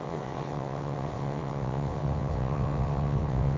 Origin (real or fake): fake